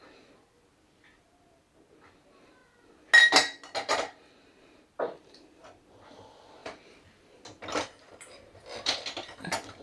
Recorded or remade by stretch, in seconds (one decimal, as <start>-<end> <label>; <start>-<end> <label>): 0.0-6.6 recorded; 6.6-7.4 remade; 7.4-9.8 recorded